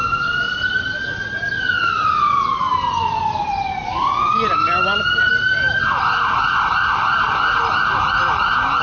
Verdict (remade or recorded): recorded